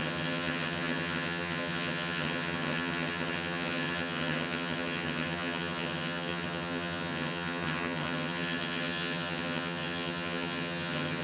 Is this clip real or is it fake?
fake